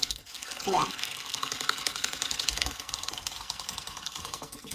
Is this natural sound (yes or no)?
no